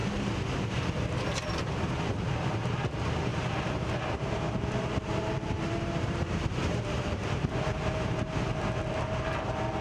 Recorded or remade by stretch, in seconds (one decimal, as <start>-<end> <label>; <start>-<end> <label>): 0.0-3.3 recorded; 3.3-8.1 remade; 8.1-9.8 recorded